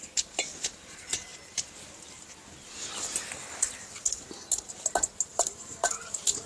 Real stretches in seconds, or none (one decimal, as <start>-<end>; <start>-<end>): 0.0-5.3; 5.9-6.5